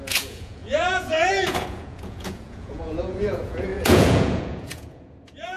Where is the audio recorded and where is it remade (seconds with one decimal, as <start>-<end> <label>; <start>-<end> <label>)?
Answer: 0.0-5.6 remade